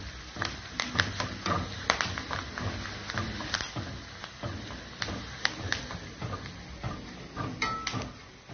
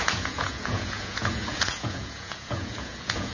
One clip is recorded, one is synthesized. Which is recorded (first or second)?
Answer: first